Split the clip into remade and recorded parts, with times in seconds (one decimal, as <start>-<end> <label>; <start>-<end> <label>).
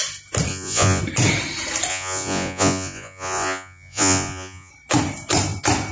0.0-0.5 recorded; 0.5-1.0 remade; 1.0-1.9 recorded; 1.9-4.7 remade; 4.7-5.9 recorded